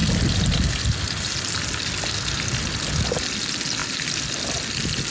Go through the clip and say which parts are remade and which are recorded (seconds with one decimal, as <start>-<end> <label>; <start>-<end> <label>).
0.0-5.1 recorded